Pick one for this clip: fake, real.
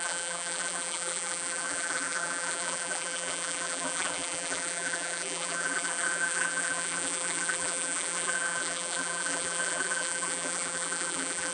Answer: fake